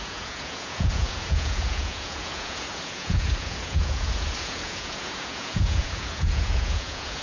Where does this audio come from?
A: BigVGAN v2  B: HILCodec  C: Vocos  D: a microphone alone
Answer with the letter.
C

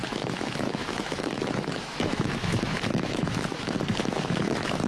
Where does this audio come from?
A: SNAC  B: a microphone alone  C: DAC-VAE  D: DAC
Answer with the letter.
C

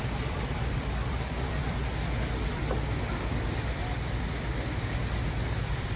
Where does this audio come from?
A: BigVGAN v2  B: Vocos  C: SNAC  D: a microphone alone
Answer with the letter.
A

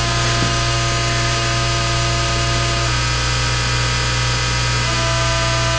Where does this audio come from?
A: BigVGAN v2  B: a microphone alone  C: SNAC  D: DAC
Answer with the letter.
B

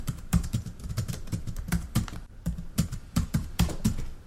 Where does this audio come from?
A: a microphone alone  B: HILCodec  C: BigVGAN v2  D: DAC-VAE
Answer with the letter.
C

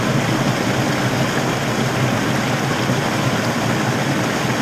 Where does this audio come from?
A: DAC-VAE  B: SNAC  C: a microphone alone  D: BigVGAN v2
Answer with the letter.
C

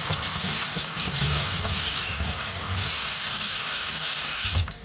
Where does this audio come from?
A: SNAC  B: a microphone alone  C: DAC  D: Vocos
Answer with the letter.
C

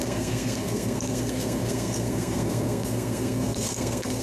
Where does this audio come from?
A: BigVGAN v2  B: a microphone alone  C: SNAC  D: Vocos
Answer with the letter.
C